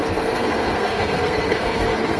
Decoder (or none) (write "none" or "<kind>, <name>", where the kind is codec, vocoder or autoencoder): codec, SNAC